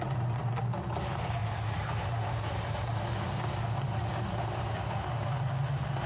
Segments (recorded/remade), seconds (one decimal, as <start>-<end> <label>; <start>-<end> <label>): 0.0-6.1 recorded